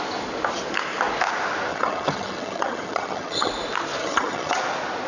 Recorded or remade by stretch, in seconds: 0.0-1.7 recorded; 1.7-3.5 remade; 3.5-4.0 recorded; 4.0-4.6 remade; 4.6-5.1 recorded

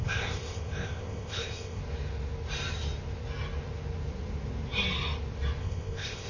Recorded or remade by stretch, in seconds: 0.0-1.8 remade; 1.8-5.6 recorded; 5.6-6.3 remade

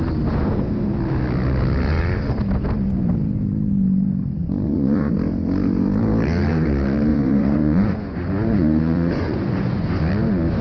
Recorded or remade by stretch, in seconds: 0.0-4.4 recorded; 4.4-5.1 remade; 5.1-7.1 recorded; 7.1-10.0 remade; 10.0-10.6 recorded